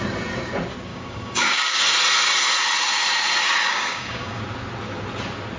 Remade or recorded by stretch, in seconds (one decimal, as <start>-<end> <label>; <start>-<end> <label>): 0.0-0.9 recorded; 0.9-1.8 remade; 1.8-3.6 recorded; 3.6-4.4 remade; 4.4-5.6 recorded